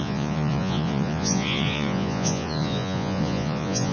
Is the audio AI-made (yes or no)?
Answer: yes